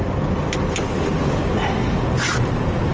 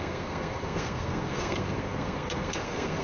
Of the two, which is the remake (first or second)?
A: second